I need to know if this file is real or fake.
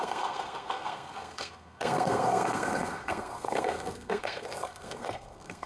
fake